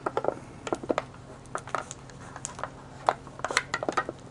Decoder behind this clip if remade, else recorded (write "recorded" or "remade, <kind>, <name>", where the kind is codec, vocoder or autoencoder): recorded